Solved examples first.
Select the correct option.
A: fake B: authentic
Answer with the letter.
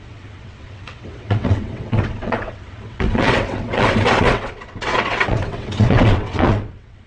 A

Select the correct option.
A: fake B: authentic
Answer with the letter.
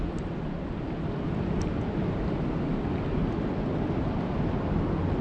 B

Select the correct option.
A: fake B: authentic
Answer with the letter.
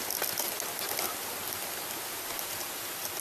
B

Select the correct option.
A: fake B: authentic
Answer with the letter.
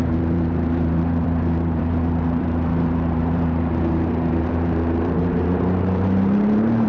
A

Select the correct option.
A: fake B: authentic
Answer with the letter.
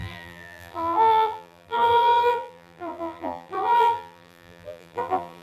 A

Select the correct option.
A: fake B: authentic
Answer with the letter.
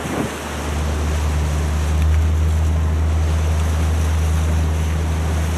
B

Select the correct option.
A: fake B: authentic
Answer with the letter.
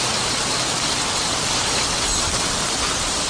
B